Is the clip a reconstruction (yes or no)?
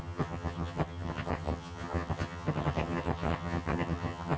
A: yes